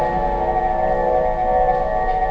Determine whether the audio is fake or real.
real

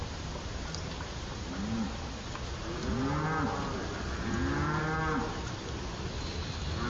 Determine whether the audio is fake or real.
real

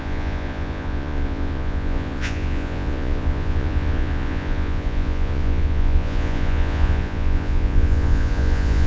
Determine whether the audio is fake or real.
fake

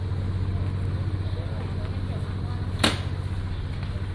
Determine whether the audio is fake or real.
real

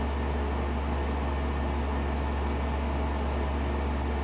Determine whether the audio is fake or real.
real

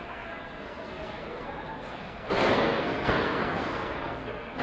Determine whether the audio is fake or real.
fake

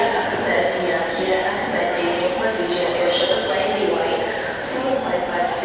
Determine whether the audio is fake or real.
real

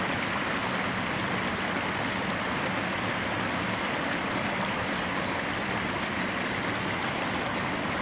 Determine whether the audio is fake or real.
real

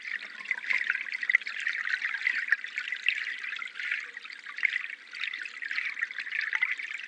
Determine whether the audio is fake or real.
real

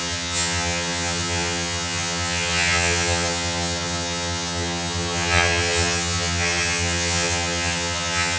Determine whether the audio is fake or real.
fake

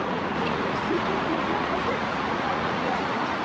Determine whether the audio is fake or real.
fake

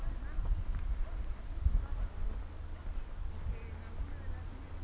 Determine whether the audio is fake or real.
real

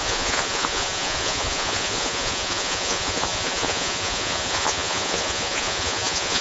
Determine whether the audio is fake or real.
fake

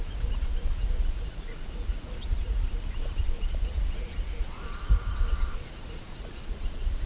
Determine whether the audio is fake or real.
fake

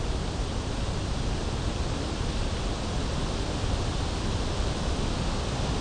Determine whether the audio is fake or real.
real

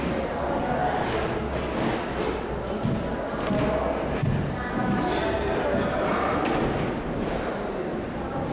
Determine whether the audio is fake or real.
real